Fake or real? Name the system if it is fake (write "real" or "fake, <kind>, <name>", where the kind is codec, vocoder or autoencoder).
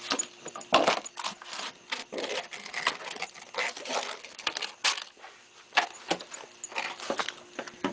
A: real